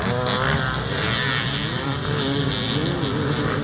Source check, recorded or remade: recorded